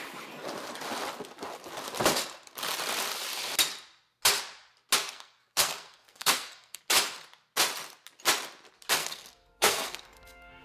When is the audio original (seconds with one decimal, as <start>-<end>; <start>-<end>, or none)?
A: 0.0-5.0; 6.8-9.0